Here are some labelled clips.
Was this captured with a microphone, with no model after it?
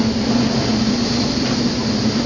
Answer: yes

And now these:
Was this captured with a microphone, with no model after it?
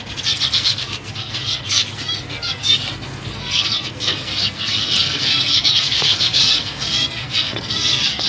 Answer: no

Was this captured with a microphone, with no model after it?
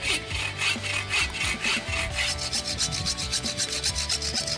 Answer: yes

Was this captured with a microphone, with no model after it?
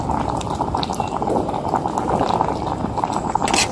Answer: yes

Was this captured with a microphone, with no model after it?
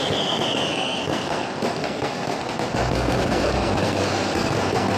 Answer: no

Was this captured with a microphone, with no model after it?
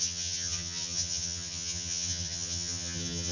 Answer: no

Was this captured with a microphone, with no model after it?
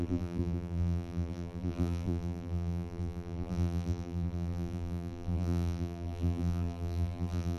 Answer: no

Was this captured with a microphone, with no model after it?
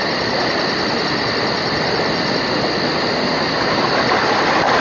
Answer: yes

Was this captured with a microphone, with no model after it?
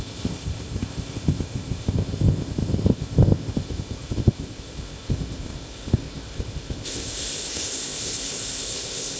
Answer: no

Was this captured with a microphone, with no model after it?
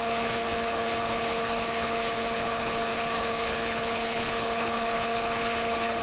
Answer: no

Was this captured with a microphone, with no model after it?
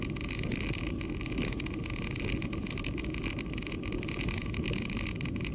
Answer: yes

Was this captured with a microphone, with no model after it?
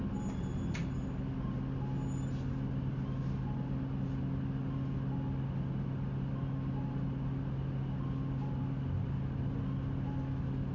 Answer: yes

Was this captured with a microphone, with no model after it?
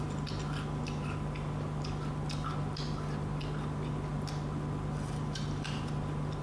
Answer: yes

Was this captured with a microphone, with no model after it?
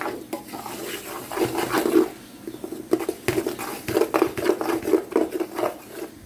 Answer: yes